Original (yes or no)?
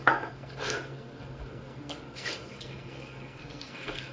no